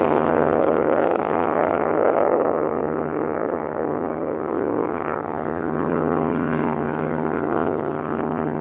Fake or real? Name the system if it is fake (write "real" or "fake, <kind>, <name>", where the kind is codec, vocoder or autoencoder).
fake, vocoder, HiFi-GAN